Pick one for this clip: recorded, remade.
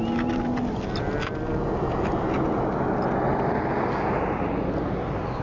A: recorded